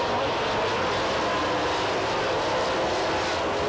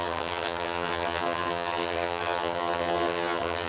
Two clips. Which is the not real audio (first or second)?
second